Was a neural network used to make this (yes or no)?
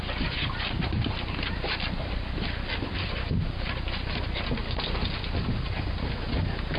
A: no